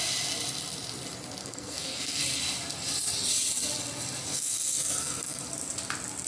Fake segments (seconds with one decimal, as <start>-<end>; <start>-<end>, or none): 1.4-2.2; 4.3-5.4